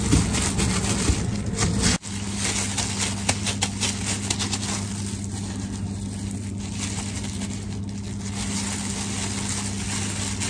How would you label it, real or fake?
real